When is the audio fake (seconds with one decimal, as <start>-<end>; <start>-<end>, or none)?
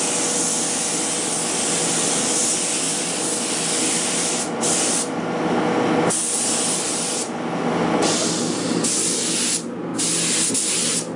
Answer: none